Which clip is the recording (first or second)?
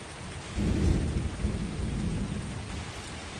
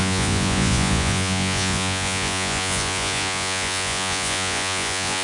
first